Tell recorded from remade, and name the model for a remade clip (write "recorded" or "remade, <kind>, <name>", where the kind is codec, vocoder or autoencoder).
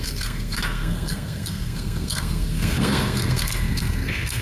remade, codec, SNAC